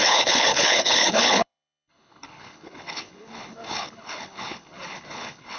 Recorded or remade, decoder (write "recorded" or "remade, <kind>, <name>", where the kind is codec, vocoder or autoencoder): remade, codec, HILCodec